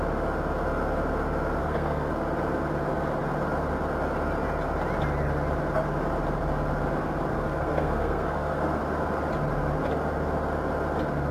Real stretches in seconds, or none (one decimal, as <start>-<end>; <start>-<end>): 0.0-1.6; 2.1-7.3; 8.8-11.3